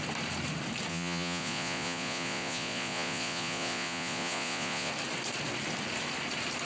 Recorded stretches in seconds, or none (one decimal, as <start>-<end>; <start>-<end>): 0.0-0.9; 4.9-6.7